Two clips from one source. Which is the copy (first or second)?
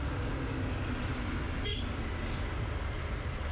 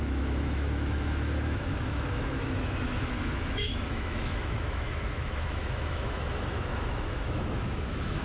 second